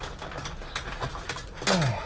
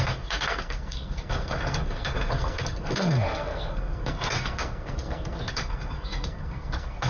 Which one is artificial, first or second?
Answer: second